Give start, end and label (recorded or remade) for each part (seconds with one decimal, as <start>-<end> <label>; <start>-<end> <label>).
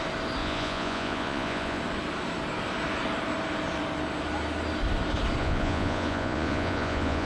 0.0-0.4 recorded; 0.4-1.8 remade; 1.8-5.4 recorded; 5.4-7.3 remade